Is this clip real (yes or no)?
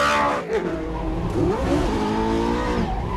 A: yes